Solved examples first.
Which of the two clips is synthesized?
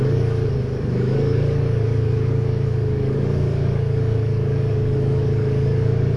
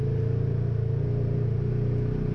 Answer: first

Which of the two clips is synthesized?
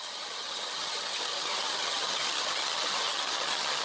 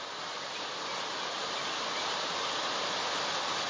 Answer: first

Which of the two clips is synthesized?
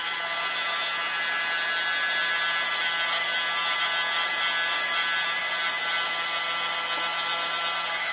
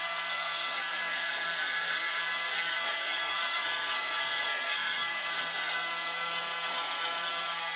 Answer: second